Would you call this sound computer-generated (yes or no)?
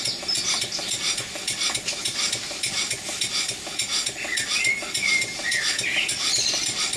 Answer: no